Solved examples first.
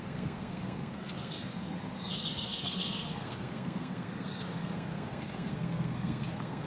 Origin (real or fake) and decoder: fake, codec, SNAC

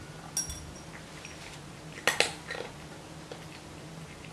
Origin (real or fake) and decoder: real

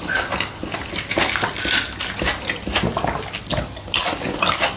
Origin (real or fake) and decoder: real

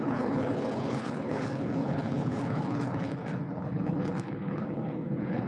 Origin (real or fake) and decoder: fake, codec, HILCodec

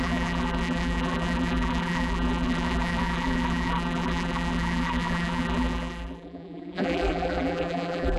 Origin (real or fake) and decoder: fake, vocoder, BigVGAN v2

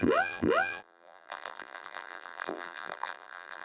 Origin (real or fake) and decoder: fake, vocoder, BigVGAN v2